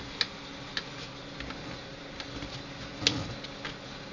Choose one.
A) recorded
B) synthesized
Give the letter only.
A